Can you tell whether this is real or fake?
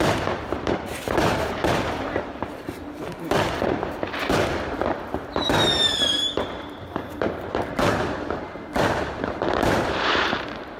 fake